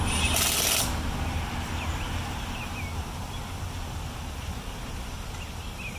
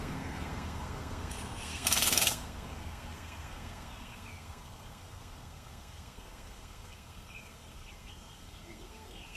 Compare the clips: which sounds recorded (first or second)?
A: first